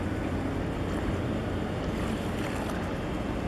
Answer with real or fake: real